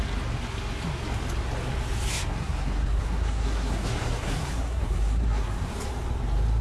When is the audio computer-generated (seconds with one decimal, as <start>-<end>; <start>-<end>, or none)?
2.1-5.7